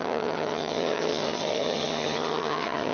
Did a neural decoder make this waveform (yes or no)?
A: yes